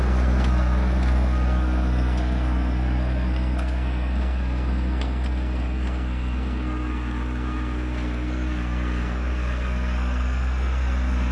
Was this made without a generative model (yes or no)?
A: no